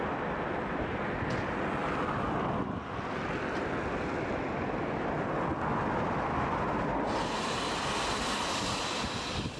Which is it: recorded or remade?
recorded